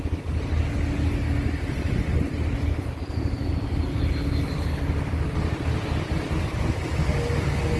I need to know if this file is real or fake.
real